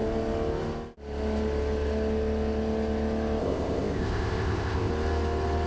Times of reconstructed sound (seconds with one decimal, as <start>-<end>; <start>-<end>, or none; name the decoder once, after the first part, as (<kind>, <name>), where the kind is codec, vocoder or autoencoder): 3.4-4.9 (codec, ZipCodec)